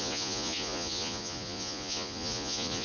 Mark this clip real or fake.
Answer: fake